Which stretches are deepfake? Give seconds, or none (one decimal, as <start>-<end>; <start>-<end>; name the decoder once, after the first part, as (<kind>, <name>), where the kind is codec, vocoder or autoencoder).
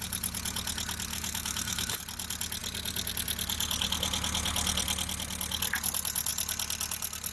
1.1-2.0 (autoencoder, DAC-VAE)